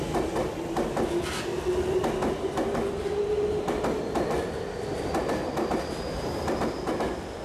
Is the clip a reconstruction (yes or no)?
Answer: no